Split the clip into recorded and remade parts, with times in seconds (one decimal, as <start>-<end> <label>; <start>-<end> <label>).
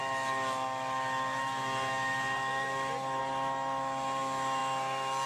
0.0-5.3 recorded